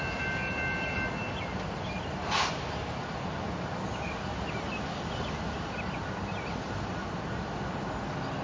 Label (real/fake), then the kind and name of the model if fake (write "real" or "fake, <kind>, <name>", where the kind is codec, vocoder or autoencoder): real